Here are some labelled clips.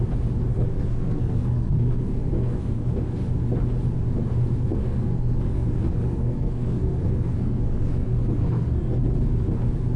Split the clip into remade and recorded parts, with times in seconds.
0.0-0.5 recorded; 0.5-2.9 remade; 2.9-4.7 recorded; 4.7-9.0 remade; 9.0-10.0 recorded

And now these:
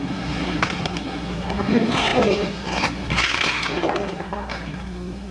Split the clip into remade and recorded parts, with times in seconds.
0.0-5.3 remade

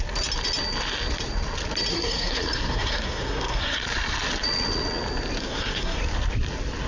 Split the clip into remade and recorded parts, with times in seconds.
0.0-1.9 recorded; 1.9-3.8 remade; 3.8-5.4 recorded; 5.4-6.0 remade; 6.0-6.9 recorded

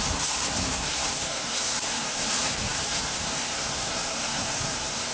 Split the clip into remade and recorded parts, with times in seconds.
0.0-5.1 remade

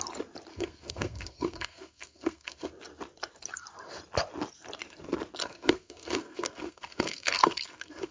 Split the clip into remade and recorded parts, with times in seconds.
0.0-0.5 recorded; 0.5-2.7 remade; 2.7-5.4 recorded; 5.4-8.1 remade